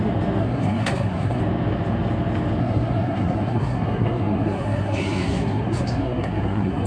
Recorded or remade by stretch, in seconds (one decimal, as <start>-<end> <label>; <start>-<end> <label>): 0.0-0.4 recorded; 0.4-1.4 remade; 1.4-2.6 recorded; 2.6-6.9 remade